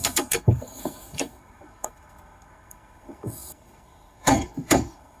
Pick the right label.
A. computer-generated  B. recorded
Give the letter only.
A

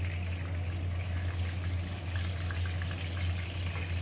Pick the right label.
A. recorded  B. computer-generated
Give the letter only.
A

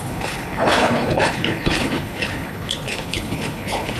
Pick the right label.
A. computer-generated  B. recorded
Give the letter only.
A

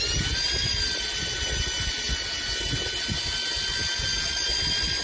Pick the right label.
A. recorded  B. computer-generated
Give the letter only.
A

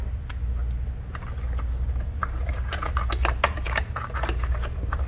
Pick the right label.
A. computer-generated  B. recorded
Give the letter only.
B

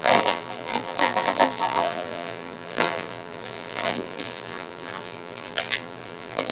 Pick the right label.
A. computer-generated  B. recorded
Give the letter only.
A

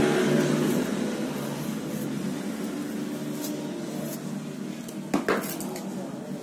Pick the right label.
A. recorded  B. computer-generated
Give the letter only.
A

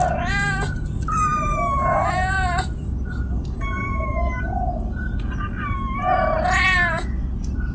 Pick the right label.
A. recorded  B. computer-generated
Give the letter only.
A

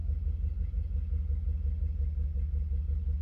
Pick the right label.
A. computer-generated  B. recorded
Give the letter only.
B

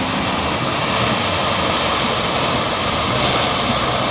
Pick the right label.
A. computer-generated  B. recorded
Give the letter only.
B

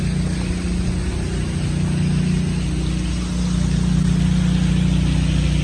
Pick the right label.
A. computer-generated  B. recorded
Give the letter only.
B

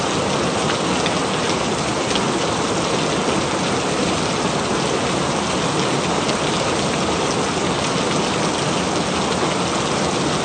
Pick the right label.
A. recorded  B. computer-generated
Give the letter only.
A